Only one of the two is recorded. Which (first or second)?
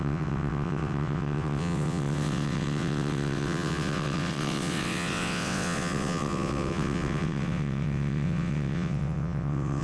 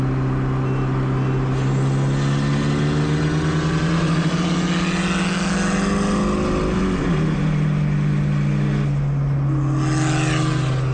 second